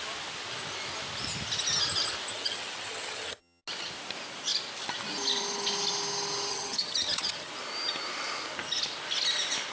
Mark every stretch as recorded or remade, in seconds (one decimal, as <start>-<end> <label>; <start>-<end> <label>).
0.0-2.3 recorded; 2.3-3.6 remade; 3.6-6.5 recorded; 6.5-7.5 remade; 7.5-9.7 recorded